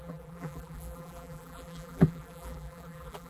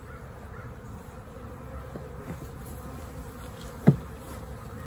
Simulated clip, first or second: first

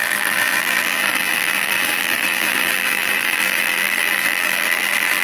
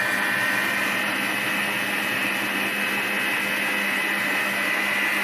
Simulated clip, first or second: first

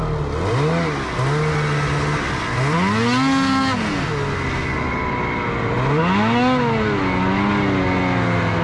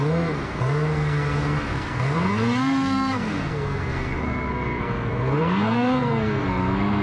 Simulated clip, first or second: second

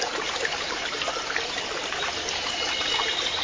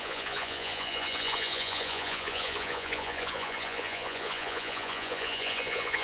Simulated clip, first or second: second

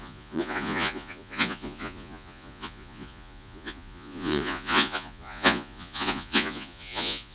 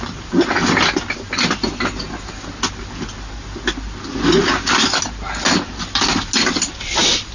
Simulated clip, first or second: first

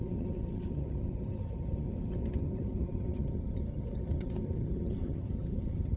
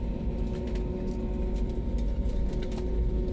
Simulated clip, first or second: first